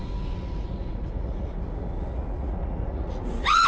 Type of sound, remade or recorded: remade